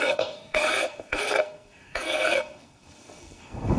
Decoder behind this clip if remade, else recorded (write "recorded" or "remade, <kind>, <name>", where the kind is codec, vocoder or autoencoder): remade, codec, SNAC